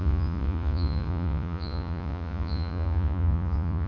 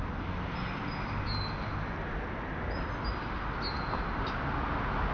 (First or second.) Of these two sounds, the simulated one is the first